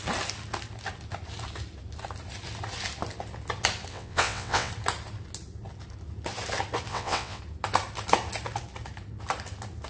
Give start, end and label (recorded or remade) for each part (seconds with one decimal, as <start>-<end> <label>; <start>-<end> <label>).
0.0-3.9 recorded; 3.9-4.7 remade; 4.7-6.9 recorded; 6.9-7.4 remade; 7.4-9.9 recorded